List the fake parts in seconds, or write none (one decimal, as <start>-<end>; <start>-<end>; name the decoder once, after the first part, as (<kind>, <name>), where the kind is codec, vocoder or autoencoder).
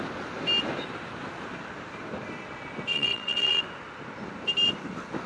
2.9-3.6 (vocoder, WaveNeXt)